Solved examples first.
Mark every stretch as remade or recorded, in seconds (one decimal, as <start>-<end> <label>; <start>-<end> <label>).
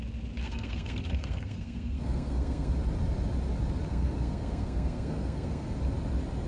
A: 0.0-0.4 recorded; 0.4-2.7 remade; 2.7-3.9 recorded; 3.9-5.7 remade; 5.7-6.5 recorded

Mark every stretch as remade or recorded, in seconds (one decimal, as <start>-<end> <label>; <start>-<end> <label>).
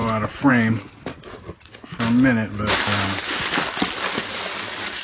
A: 0.0-1.1 recorded; 1.1-1.7 remade; 1.7-5.0 recorded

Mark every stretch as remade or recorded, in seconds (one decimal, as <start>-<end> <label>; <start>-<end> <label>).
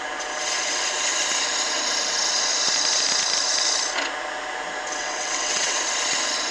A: 0.0-5.0 recorded; 5.0-5.8 remade; 5.8-6.5 recorded